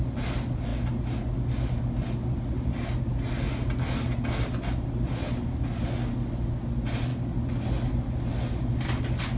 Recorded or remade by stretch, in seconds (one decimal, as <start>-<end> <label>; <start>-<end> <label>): 0.0-9.4 recorded